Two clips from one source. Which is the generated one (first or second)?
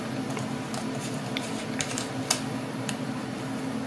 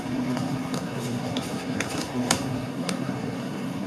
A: second